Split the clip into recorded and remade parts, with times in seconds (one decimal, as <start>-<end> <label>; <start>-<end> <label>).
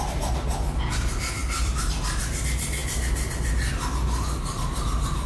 0.0-1.4 recorded; 1.4-2.0 remade; 2.0-5.3 recorded